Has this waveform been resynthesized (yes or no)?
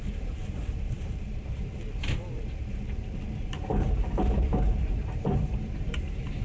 yes